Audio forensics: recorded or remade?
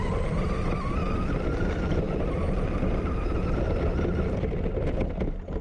recorded